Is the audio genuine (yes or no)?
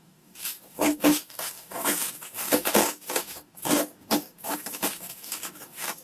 no